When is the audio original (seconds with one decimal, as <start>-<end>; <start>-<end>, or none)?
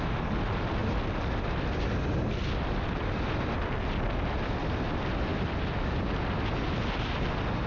0.0-7.7